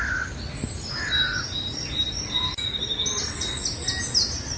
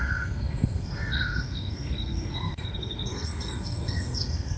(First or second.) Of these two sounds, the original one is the first